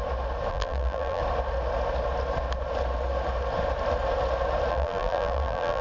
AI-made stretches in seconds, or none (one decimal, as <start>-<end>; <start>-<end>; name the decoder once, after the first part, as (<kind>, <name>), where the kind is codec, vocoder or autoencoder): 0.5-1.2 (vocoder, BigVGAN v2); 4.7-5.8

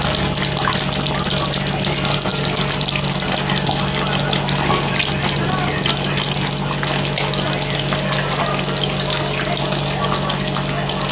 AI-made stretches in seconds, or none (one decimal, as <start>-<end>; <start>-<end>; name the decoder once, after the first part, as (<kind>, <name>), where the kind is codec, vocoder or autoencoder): none

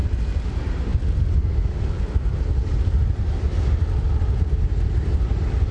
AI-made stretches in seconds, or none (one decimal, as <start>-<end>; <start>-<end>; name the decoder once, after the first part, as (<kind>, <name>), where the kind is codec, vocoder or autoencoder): none

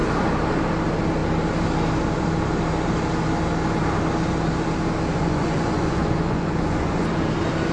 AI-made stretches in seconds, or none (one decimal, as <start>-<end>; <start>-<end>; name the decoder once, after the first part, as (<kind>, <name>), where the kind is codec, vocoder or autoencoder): 5.1-7.1 (vocoder, Vocos)